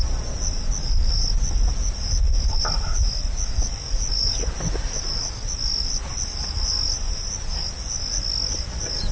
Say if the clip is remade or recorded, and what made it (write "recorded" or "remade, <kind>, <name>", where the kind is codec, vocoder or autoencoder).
recorded